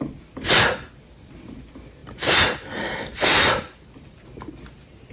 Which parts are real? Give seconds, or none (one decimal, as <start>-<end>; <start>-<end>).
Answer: 0.0-5.1